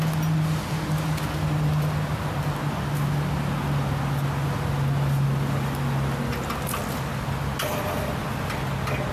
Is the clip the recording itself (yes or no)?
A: yes